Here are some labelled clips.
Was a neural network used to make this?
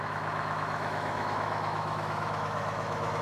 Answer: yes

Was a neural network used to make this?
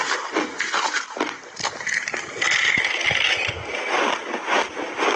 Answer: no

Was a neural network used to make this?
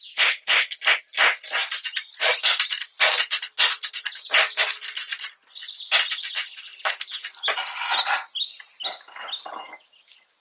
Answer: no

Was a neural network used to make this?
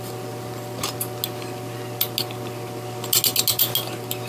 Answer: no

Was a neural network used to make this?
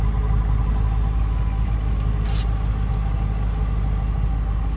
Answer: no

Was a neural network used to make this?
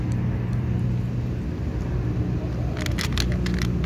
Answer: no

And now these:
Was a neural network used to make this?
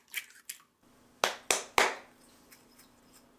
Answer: no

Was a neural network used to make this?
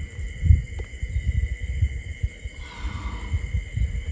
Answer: no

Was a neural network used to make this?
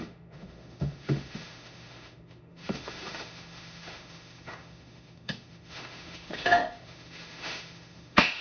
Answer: yes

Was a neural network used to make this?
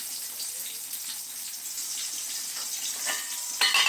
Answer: no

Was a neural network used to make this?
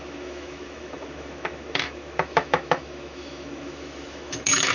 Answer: yes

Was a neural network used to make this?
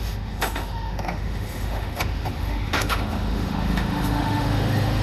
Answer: yes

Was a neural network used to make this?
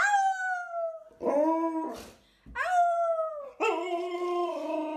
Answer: no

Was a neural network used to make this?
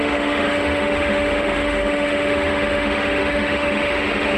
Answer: yes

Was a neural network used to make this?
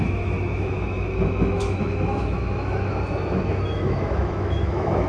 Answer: yes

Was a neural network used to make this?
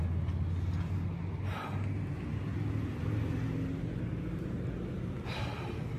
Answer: no